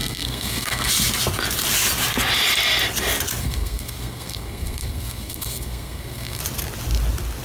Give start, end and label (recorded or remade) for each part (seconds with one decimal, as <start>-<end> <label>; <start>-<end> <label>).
0.0-0.9 remade; 0.9-3.4 recorded; 3.4-6.4 remade; 6.4-7.4 recorded